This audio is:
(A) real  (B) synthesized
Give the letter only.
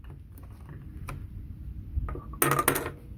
A